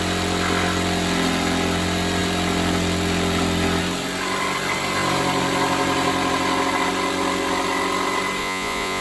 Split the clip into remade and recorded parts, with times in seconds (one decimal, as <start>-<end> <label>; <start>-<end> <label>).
0.0-8.4 recorded; 8.4-9.0 remade